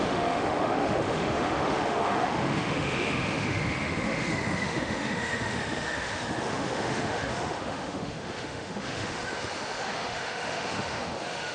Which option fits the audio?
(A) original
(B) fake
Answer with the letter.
B